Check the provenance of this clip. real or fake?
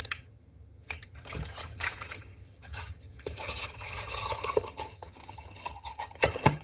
fake